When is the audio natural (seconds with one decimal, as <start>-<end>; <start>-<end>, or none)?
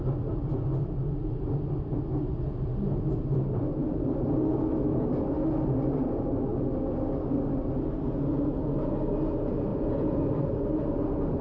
0.0-3.8; 4.3-9.7; 10.8-11.4